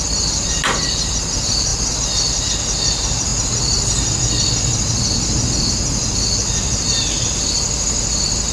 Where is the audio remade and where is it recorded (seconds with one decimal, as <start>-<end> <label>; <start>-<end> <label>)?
0.0-8.5 recorded